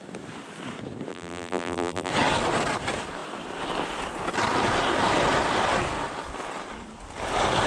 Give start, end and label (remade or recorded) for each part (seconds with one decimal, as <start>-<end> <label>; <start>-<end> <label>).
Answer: 0.0-1.1 recorded; 1.1-2.1 remade; 2.1-7.7 recorded